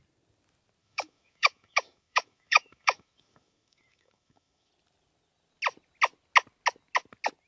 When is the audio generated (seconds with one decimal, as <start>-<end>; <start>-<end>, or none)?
0.8-4.7